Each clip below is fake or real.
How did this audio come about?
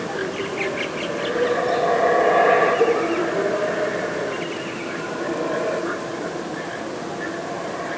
real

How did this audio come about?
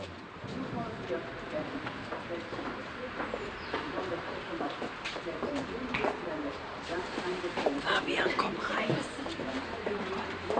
fake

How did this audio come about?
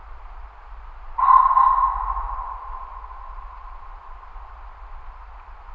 real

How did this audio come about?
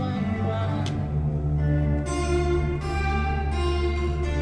real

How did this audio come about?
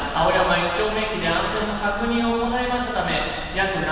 fake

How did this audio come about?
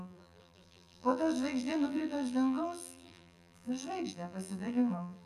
fake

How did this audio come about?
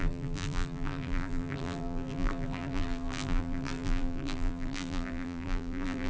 fake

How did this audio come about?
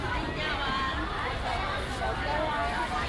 fake